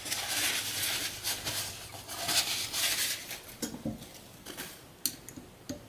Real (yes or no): yes